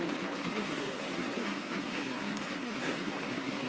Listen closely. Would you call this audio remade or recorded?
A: remade